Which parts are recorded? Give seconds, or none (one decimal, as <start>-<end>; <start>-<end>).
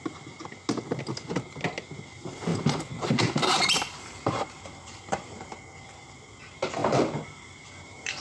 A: 0.0-2.5; 5.5-6.8